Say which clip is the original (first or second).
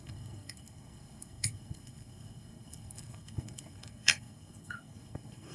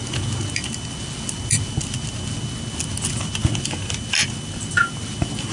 second